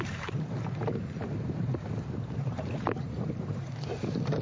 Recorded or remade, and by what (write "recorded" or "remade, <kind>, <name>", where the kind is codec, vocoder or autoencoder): remade, vocoder, BigVGAN v2